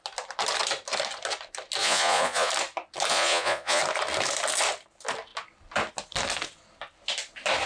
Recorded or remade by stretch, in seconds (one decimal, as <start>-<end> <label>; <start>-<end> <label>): 0.0-1.8 recorded; 1.8-2.5 remade; 2.5-3.1 recorded; 3.1-3.8 remade; 3.8-7.7 recorded